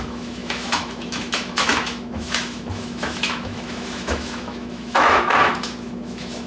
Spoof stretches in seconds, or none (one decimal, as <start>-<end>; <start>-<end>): 0.0-6.5